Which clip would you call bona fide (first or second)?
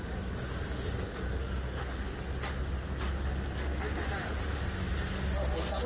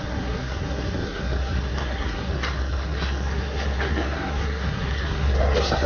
first